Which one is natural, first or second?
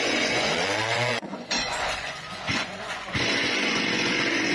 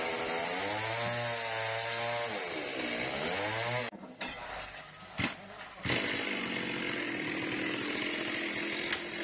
second